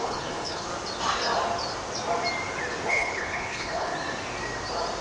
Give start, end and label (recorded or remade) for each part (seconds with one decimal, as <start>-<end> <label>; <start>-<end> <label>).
0.0-0.7 remade; 0.7-2.9 recorded; 2.9-3.9 remade; 3.9-5.0 recorded